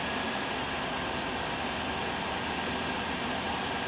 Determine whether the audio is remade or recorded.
recorded